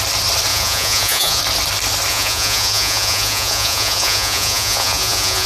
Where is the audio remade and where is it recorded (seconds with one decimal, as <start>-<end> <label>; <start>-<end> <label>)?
0.0-0.5 recorded; 0.5-1.4 remade; 1.4-2.1 recorded; 2.1-5.5 remade